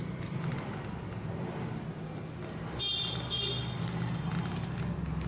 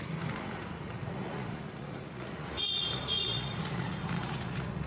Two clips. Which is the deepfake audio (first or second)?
second